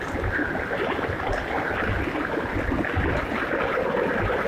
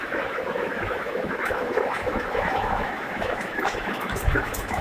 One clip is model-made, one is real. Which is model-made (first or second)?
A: second